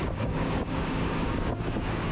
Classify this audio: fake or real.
fake